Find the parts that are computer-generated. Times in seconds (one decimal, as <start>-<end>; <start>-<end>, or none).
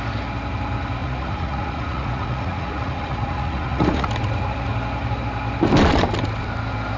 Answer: 1.0-4.1